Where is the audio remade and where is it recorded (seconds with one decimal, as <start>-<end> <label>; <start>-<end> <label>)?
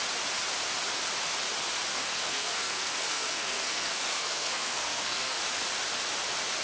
0.0-1.9 recorded; 1.9-5.4 remade; 5.4-6.6 recorded